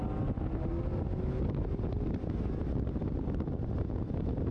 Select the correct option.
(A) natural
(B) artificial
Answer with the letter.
A